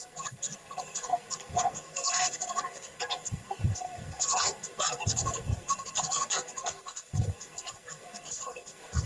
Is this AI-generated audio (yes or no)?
yes